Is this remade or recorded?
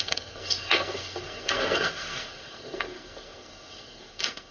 remade